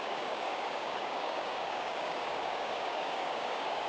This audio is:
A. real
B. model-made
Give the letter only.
B